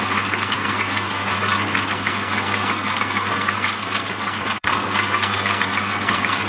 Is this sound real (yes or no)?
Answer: no